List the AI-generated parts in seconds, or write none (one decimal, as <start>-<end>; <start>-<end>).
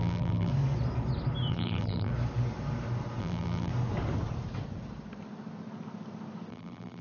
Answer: 0.0-0.5; 1.5-2.1; 3.2-3.7; 6.5-7.0